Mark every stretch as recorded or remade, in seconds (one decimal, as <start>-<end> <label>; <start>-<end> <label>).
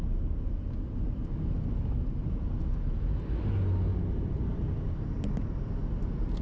0.0-6.4 recorded